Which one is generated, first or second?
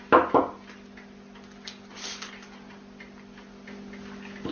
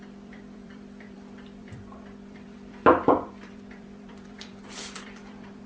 second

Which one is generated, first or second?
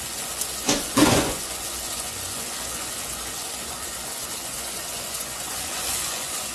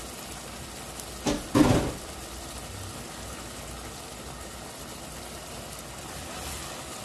first